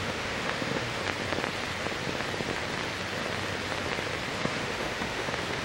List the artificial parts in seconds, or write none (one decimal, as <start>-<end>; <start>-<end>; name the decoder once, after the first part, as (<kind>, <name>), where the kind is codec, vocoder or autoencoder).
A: 0.0-1.0 (autoencoder, DAC-VAE); 4.3-5.6